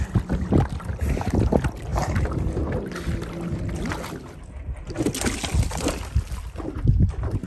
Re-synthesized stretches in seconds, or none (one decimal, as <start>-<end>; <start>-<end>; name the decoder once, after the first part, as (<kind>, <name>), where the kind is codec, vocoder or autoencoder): none